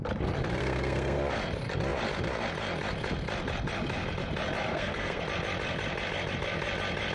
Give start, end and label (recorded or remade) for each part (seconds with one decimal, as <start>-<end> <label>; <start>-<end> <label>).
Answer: 0.0-0.6 recorded; 0.6-1.2 remade; 1.2-4.7 recorded; 4.7-5.2 remade; 5.2-7.1 recorded